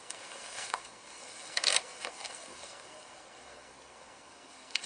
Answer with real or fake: fake